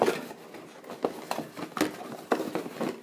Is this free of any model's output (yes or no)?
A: yes